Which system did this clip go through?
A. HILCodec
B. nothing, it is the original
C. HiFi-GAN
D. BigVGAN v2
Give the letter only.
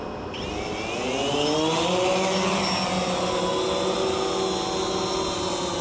B